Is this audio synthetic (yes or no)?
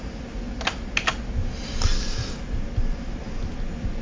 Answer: no